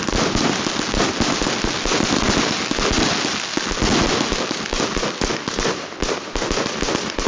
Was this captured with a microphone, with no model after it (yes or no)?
yes